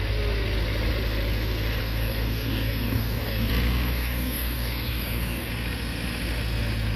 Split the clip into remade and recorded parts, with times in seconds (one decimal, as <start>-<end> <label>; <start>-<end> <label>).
0.0-1.8 recorded; 1.8-3.5 remade; 3.5-3.9 recorded; 3.9-5.5 remade; 5.5-7.0 recorded